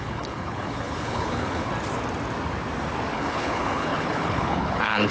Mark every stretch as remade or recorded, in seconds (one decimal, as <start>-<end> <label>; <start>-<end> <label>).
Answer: 0.0-1.7 remade; 1.7-3.1 recorded; 3.1-5.1 remade